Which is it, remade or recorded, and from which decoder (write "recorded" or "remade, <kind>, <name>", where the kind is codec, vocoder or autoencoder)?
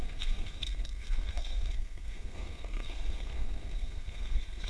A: remade, codec, SNAC